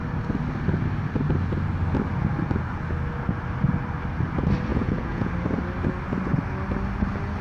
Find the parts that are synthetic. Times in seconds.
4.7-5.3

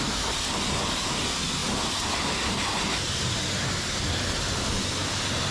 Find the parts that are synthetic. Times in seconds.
none

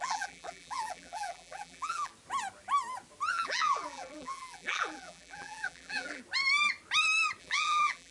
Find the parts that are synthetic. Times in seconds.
0.0-2.1; 3.3-6.2; 7.4-8.1

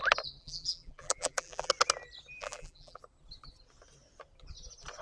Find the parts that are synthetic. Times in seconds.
0.4-1.7; 2.4-3.0